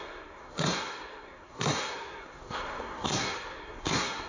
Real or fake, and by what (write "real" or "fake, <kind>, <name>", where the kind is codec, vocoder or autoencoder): fake, codec, SNAC